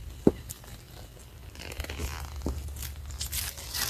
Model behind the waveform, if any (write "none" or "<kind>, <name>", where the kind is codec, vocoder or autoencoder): none